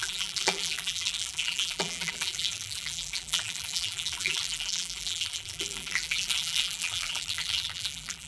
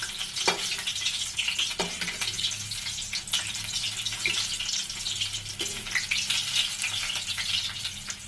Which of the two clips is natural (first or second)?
second